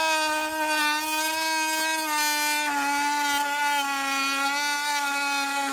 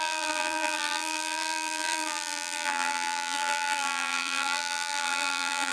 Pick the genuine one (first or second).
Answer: first